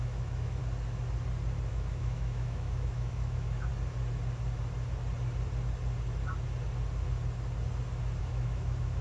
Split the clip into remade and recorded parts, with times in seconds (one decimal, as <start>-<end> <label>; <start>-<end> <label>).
0.0-0.6 remade; 0.6-1.7 recorded; 1.7-3.7 remade; 3.7-8.2 recorded; 8.2-9.0 remade